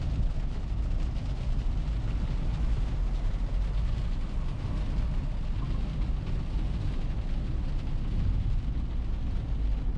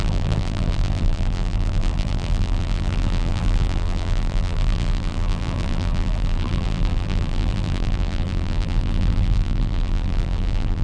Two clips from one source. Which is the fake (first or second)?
second